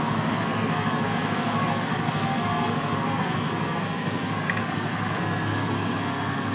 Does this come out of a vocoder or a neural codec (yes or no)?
yes